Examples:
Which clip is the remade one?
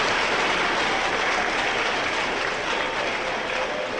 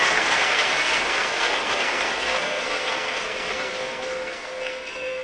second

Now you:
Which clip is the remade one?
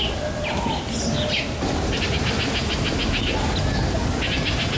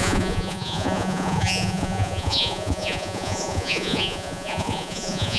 second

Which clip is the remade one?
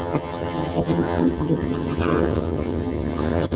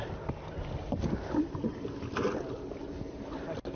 first